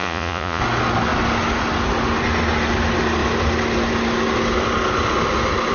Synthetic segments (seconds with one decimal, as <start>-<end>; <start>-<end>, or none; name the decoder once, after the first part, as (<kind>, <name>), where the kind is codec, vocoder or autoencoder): 0.0-0.6 (vocoder, Vocos)